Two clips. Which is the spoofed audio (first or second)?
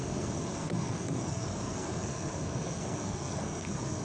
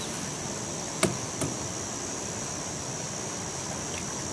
first